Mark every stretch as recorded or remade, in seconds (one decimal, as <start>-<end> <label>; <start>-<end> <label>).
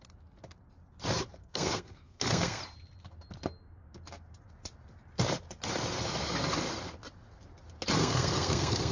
0.0-1.4 recorded; 1.4-2.6 remade; 2.6-8.0 recorded; 8.0-8.9 remade